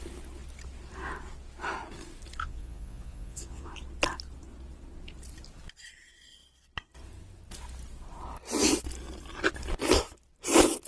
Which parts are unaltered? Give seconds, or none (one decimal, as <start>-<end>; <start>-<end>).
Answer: 0.0-2.4; 3.7-10.9